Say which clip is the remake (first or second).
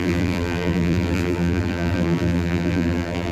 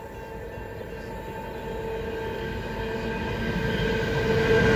first